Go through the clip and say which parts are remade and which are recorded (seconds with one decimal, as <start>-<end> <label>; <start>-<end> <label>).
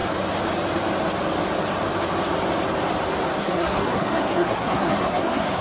0.0-3.4 recorded; 3.4-5.6 remade